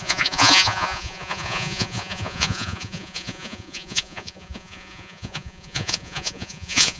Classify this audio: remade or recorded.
remade